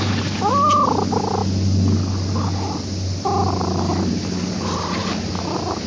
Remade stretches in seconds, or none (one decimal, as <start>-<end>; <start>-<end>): none